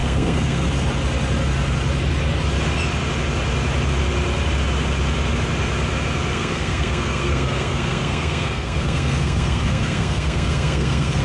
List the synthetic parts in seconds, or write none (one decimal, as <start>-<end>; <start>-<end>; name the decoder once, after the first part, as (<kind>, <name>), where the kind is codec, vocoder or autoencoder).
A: 0.0-0.7 (codec, SNAC); 6.3-11.2